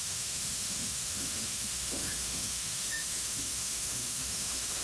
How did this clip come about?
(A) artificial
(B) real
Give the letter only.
A